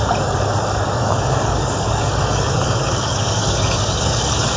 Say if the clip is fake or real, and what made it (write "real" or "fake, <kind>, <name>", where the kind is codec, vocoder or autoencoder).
fake, codec, DAC